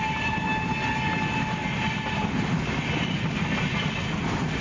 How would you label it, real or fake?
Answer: real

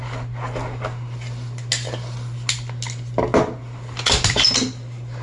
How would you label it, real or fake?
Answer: real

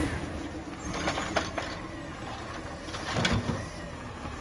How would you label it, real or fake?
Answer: real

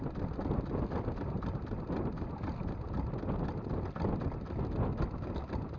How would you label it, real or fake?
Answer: real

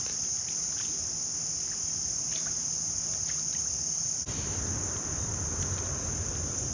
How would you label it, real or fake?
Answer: real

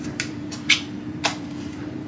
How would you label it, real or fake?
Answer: fake